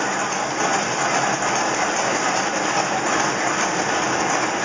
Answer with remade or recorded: recorded